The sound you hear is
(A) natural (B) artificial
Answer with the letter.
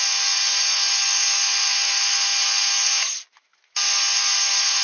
A